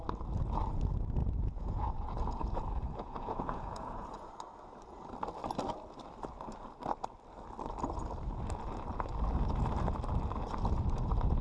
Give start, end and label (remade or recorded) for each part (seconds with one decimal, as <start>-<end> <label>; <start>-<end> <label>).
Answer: 0.0-1.2 recorded; 1.2-4.3 remade; 4.3-11.4 recorded